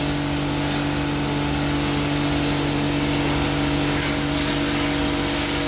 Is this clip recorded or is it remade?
recorded